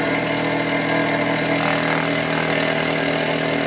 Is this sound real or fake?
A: real